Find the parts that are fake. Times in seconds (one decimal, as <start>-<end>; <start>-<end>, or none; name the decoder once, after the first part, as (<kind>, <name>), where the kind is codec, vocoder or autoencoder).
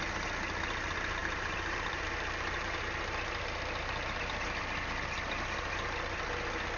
1.2-2.8 (vocoder, BigVGAN v2)